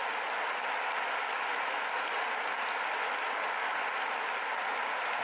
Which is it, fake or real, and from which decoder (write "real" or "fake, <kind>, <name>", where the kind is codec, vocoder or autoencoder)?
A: real